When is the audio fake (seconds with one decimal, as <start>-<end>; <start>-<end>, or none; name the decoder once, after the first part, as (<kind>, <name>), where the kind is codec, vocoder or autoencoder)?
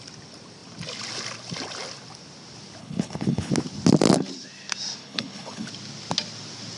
2.8-3.5 (codec, HILCodec); 5.0-5.7